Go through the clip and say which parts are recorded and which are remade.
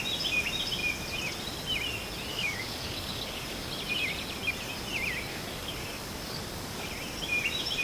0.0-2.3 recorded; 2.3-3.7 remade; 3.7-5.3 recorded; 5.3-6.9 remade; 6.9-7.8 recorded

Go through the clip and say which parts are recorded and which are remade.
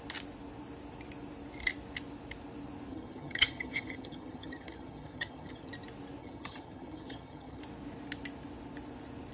0.0-2.9 recorded; 2.9-5.7 remade; 5.7-6.2 recorded; 6.2-7.6 remade; 7.6-9.3 recorded